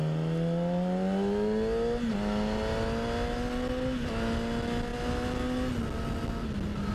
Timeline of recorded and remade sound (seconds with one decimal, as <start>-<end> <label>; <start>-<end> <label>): 0.0-6.9 recorded